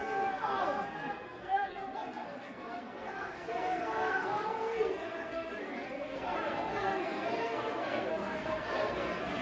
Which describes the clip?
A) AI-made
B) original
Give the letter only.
A